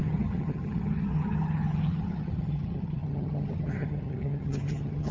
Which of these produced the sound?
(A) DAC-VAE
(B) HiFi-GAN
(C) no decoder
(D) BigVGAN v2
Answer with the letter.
B